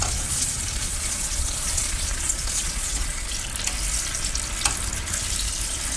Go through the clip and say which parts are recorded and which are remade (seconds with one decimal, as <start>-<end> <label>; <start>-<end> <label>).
0.0-3.3 remade; 3.3-6.0 recorded